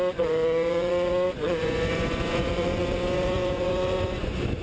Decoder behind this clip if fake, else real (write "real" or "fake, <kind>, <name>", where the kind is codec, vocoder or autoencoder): fake, vocoder, Vocos